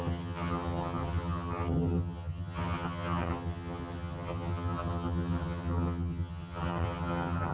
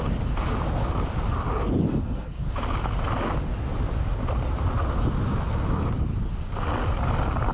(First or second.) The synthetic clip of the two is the first